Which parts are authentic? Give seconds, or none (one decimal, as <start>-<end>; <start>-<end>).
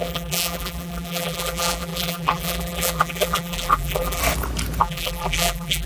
4.2-4.8